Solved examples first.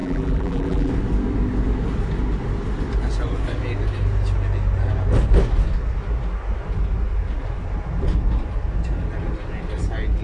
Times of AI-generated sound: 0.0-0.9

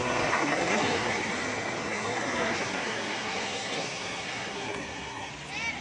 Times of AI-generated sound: 0.0-1.3; 1.8-5.3

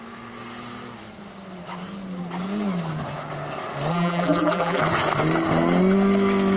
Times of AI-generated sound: 3.9-4.8

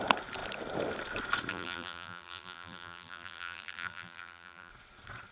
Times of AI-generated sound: 1.5-4.7

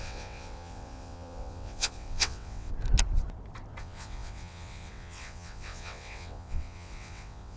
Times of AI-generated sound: 0.0-2.7; 3.8-7.6

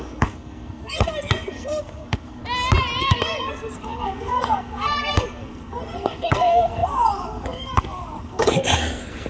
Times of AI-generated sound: 0.0-2.4; 3.0-9.3

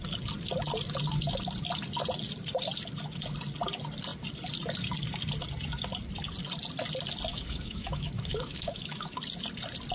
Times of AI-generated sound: 7.3-9.2